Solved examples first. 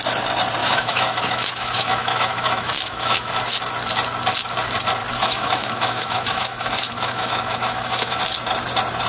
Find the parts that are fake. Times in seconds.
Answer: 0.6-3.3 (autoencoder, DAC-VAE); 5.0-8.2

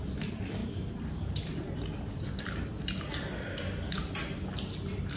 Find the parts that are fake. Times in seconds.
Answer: none

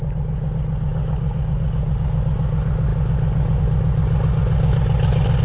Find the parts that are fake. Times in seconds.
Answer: none